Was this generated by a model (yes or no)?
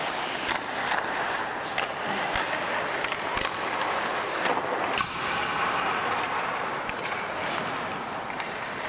no